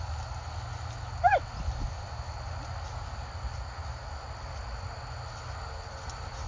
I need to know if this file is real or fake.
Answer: real